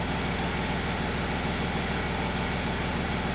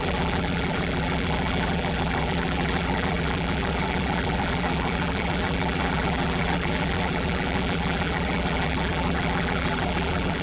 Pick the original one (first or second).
first